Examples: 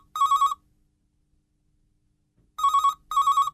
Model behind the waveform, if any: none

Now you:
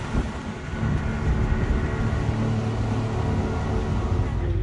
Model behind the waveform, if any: none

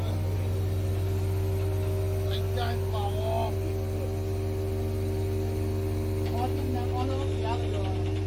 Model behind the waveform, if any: none